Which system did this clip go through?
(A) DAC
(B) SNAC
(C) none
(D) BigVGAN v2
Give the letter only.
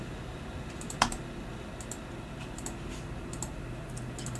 C